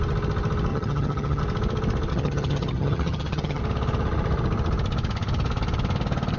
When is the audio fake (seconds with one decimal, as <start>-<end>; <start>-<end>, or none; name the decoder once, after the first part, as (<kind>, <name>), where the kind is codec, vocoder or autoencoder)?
0.7-1.4 (vocoder, HiFi-GAN); 2.1-3.6